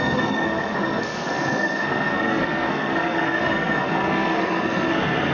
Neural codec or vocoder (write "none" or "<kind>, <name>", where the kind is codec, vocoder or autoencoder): codec, SNAC